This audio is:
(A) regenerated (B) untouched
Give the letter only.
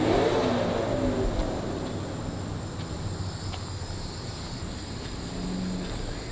B